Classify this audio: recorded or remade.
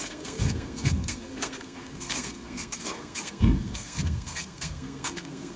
remade